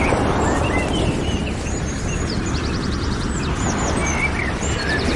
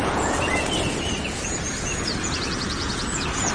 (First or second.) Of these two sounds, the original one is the first